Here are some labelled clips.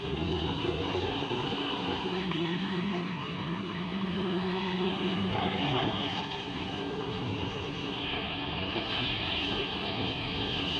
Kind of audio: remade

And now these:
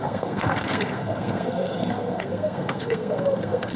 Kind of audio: remade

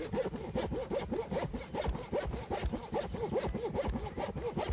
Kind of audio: recorded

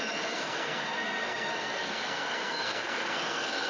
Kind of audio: remade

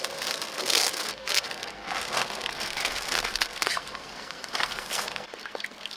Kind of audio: remade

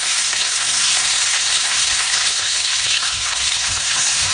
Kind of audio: remade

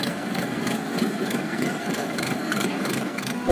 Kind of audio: remade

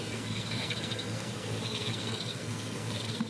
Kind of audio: remade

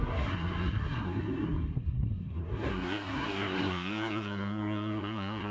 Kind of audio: remade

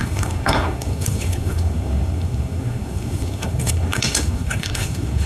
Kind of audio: remade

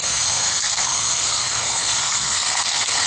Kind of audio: remade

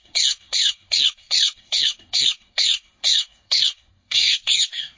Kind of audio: remade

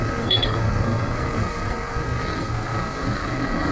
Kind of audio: remade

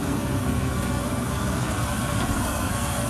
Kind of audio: remade